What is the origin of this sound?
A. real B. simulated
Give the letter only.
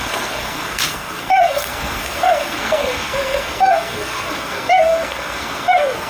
B